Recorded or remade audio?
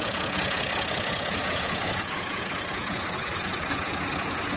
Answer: remade